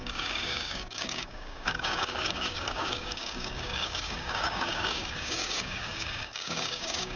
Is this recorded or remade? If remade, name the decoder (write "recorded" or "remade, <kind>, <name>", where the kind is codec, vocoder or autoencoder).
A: remade, codec, DAC